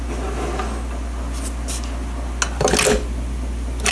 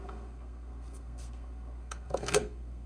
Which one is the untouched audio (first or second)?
first